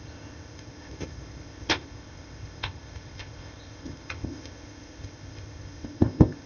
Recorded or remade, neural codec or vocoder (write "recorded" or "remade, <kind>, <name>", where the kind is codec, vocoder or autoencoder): remade, codec, ZipCodec